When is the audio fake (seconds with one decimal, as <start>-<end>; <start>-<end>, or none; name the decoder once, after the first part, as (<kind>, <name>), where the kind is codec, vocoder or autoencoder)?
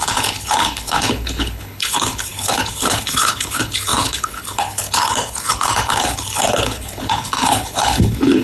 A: 0.0-8.4 (codec, HILCodec)